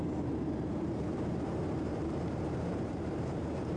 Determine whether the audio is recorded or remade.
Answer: remade